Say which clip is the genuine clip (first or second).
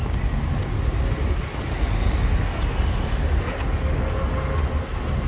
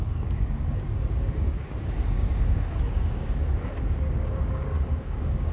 first